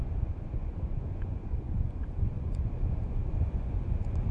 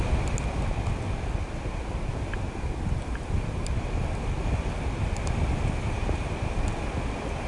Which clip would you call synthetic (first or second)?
first